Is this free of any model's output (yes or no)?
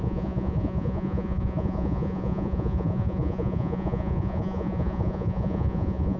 no